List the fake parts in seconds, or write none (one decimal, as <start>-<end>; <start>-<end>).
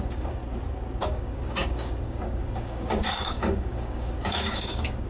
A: 0.0-0.4; 1.0-5.1